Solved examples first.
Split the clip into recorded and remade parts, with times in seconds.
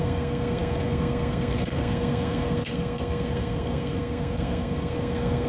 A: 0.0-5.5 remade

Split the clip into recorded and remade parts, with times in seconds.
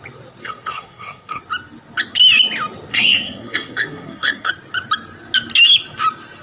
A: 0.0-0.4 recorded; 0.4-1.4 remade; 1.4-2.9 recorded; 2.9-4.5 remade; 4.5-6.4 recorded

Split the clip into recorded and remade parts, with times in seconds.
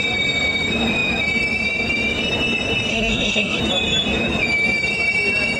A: 0.0-2.9 recorded; 2.9-3.6 remade; 3.6-5.6 recorded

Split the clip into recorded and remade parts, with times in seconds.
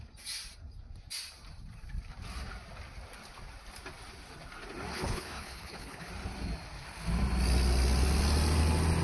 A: 0.0-4.9 recorded; 4.9-6.1 remade; 6.1-9.0 recorded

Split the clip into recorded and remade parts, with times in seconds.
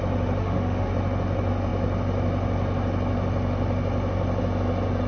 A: 0.0-0.4 recorded; 0.4-0.9 remade; 0.9-5.1 recorded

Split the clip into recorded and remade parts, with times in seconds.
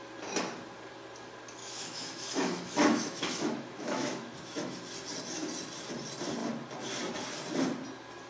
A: 0.0-1.6 recorded; 1.6-4.8 remade; 4.8-8.3 recorded